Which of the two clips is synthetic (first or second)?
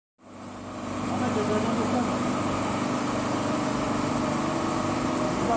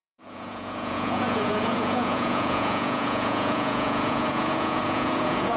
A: second